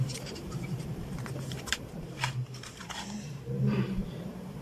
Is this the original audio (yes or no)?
no